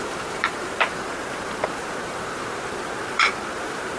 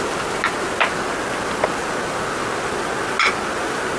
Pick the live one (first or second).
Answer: second